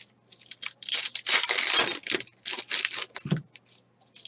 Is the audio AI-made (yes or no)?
no